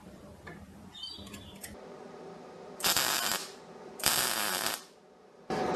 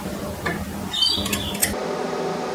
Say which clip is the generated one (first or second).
first